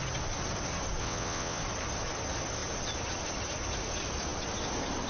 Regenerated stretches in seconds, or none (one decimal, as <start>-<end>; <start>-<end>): 1.0-1.6